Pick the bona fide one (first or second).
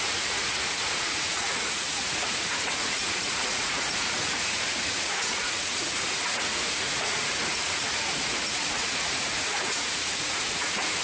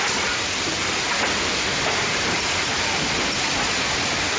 second